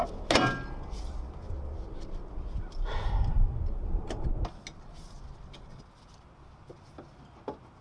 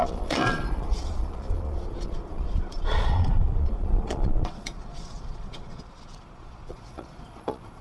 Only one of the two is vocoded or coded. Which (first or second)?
second